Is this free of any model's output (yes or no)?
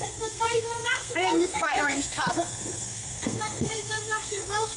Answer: no